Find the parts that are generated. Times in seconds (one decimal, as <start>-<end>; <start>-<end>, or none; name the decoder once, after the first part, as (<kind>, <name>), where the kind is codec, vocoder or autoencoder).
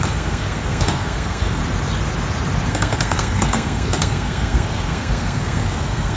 0.0-1.6 (codec, SNAC); 2.7-6.2